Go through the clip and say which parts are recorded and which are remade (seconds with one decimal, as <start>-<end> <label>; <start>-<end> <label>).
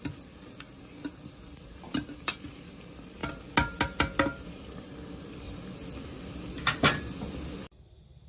0.0-8.3 recorded